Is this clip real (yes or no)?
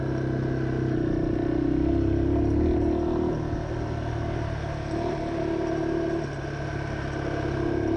yes